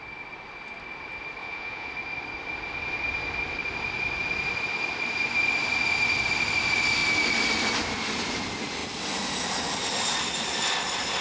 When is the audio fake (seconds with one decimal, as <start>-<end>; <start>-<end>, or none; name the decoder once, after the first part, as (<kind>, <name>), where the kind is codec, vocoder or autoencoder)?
1.4-1.9 (vocoder, Vocos)